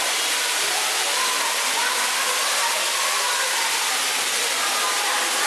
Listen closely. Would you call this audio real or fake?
real